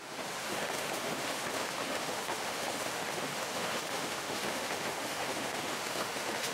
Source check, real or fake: fake